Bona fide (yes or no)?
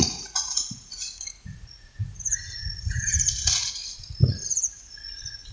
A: no